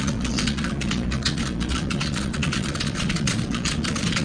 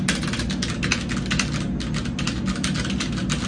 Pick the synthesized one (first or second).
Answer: first